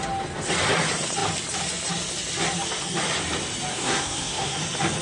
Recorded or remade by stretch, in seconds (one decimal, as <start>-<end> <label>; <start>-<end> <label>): 0.0-3.7 recorded; 3.7-4.6 remade; 4.6-5.0 recorded